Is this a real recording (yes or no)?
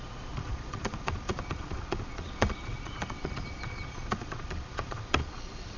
no